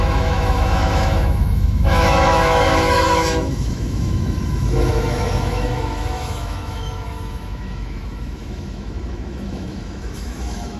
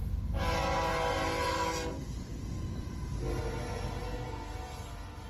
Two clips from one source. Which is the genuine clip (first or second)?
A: second